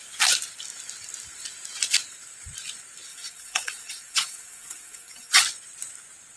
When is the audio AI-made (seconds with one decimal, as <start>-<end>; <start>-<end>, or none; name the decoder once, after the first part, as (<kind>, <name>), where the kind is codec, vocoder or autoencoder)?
3.1-5.4 (vocoder, WaveNeXt)